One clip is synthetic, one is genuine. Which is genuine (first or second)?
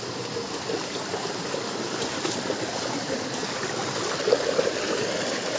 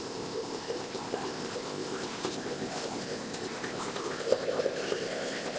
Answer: first